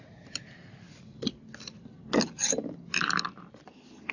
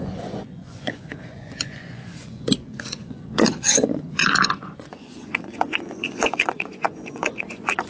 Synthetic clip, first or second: second